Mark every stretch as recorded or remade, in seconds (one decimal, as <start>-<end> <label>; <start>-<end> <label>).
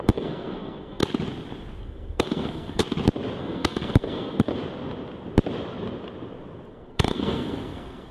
0.0-1.0 remade; 1.0-1.8 recorded; 1.8-2.8 remade; 2.8-3.4 recorded; 3.4-4.5 remade; 4.5-6.7 recorded; 6.7-8.1 remade